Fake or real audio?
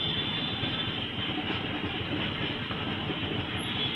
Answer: real